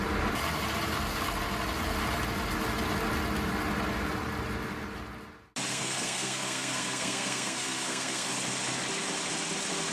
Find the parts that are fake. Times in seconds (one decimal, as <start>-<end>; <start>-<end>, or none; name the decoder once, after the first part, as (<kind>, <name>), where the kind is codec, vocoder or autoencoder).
5.7-8.3 (codec, SNAC)